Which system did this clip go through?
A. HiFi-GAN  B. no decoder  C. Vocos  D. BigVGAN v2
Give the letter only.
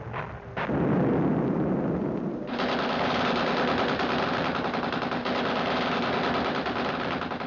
B